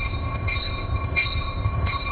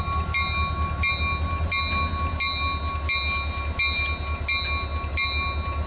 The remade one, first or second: first